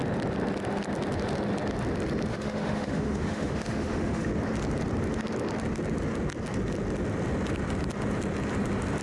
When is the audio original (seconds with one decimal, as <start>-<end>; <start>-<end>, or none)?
0.0-2.3; 4.3-9.0